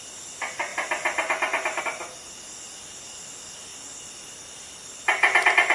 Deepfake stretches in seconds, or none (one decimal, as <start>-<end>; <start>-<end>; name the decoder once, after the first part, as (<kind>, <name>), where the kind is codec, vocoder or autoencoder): 3.7-4.7 (vocoder, BigVGAN v2)